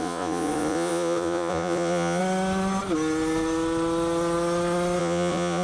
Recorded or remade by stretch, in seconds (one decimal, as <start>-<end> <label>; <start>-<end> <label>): 0.0-2.2 remade; 2.2-5.0 recorded; 5.0-5.6 remade

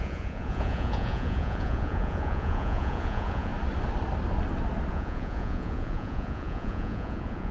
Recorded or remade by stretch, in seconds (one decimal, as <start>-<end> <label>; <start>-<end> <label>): 0.0-3.5 remade; 3.5-4.9 recorded; 4.9-7.5 remade